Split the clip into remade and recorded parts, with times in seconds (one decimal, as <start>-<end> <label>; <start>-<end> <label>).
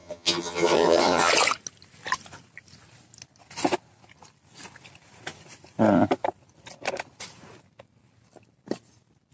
0.0-1.3 remade; 1.3-9.3 recorded